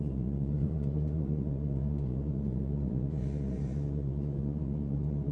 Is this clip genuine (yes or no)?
no